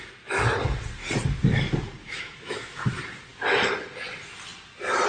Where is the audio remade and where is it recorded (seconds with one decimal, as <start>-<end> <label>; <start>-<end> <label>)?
0.0-2.0 recorded; 2.0-2.9 remade; 2.9-5.1 recorded